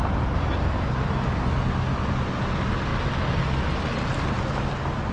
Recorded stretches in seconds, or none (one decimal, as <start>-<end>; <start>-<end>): 0.0-5.1